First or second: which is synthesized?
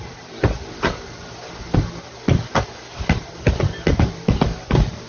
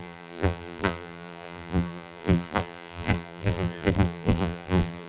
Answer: second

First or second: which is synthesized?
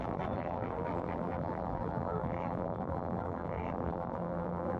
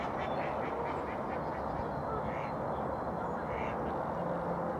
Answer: first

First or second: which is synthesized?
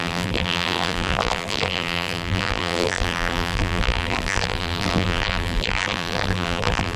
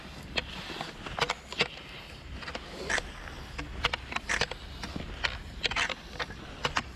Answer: first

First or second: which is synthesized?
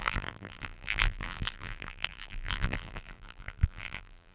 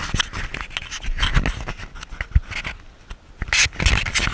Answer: first